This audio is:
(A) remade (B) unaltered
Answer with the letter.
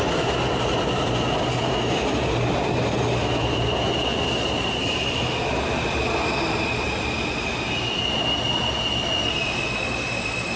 B